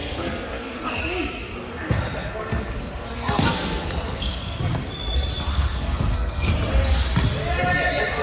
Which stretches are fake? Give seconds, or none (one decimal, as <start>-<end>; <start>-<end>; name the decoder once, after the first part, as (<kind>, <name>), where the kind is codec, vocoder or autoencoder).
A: 0.0-1.0 (codec, SNAC); 1.6-4.6; 5.5-6.5